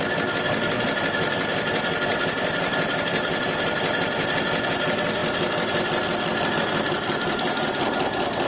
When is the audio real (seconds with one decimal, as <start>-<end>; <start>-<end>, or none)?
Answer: 0.0-2.1; 3.0-8.5